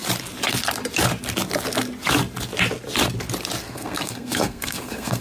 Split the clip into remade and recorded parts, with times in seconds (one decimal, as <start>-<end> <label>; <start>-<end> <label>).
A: 0.0-3.6 recorded; 3.6-5.2 remade

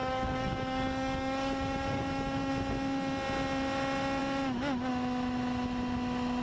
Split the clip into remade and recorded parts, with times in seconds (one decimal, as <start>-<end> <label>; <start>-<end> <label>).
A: 0.0-2.5 remade; 2.5-6.4 recorded

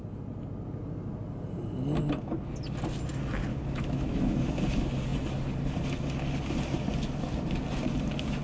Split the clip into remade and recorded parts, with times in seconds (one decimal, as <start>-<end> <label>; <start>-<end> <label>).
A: 0.0-3.5 recorded; 3.5-4.5 remade; 4.5-8.4 recorded

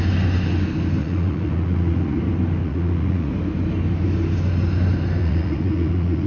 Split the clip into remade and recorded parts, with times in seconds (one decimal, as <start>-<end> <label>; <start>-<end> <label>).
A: 0.0-1.0 recorded; 1.0-2.2 remade; 2.2-2.6 recorded; 2.6-3.3 remade; 3.3-5.2 recorded; 5.2-6.3 remade

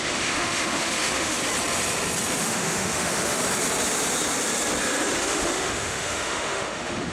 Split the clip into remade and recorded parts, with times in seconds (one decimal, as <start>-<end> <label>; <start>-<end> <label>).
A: 0.0-1.4 remade; 1.4-2.4 recorded; 2.4-3.4 remade; 3.4-5.2 recorded; 5.2-7.1 remade

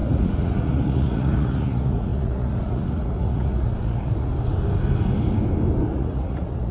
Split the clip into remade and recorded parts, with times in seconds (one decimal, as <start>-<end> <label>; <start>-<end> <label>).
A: 0.0-4.3 remade; 4.3-5.9 recorded; 5.9-6.7 remade

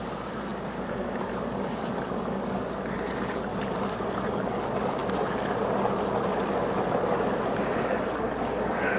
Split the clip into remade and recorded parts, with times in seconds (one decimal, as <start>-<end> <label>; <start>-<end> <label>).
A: 0.0-3.5 remade; 3.5-4.1 recorded; 4.1-5.0 remade; 5.0-7.8 recorded; 7.8-9.0 remade

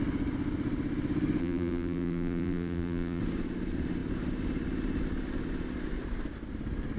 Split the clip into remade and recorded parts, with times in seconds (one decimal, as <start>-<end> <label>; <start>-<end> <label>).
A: 0.0-1.4 recorded; 1.4-3.2 remade; 3.2-7.0 recorded